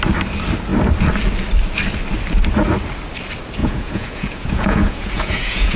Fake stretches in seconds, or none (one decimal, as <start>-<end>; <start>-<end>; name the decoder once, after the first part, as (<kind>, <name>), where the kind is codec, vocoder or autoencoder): 3.6-5.8 (vocoder, Vocos)